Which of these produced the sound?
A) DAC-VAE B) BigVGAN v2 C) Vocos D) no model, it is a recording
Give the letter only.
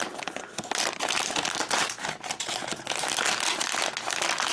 D